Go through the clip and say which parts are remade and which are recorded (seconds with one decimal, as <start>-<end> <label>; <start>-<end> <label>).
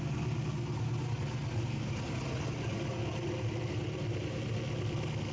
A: 0.0-5.3 recorded